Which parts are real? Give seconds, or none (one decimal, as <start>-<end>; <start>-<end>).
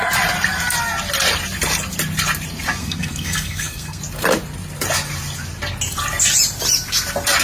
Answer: 0.0-2.8; 4.0-7.4